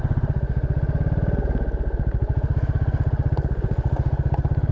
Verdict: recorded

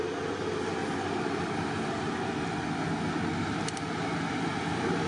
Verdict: recorded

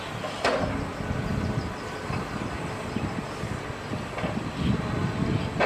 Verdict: recorded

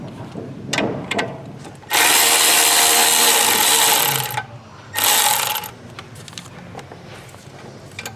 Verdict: recorded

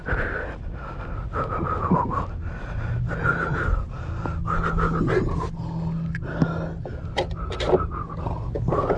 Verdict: recorded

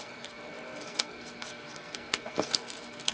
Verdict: remade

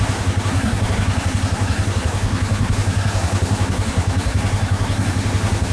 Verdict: remade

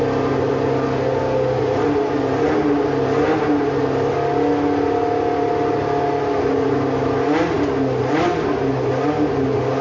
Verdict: recorded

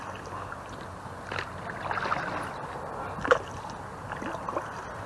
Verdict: recorded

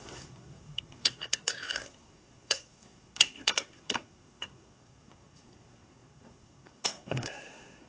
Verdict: remade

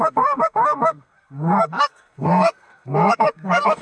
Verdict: remade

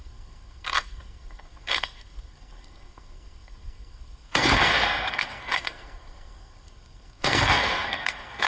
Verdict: remade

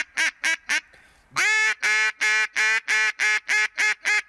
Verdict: recorded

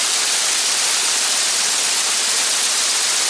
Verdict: recorded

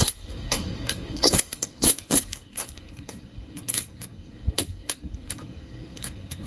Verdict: remade